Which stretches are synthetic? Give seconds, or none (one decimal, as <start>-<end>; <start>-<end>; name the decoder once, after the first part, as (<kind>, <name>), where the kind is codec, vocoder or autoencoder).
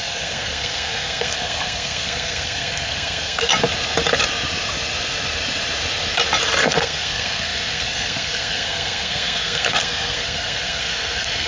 0.0-3.5 (codec, SNAC); 6.6-11.5